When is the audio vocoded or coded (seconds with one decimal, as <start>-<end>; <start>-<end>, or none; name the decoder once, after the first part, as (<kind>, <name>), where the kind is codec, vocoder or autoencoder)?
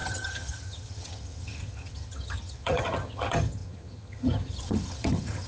0.0-5.5 (vocoder, HiFi-GAN)